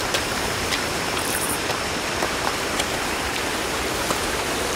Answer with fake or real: fake